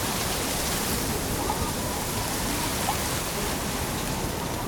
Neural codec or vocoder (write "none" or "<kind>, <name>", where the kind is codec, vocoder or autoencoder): vocoder, BigVGAN v2